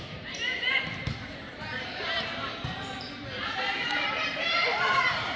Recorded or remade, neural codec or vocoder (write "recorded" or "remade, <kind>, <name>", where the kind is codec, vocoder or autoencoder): remade, vocoder, BigVGAN v2